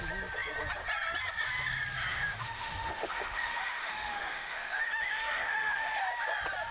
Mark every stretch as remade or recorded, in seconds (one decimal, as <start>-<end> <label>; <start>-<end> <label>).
0.0-2.1 recorded; 2.1-6.1 remade; 6.1-6.7 recorded